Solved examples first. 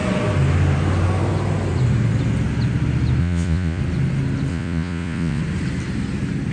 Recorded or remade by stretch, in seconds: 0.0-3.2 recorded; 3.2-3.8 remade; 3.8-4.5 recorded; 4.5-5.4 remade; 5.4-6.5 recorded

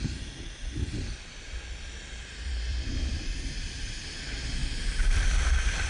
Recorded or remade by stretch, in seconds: 0.0-2.7 recorded; 2.7-3.3 remade; 3.3-4.6 recorded; 4.6-5.9 remade

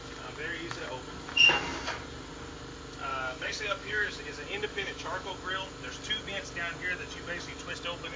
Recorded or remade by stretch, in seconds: 0.0-3.1 recorded; 3.1-4.2 remade; 4.2-4.7 recorded; 4.7-5.3 remade; 5.3-8.2 recorded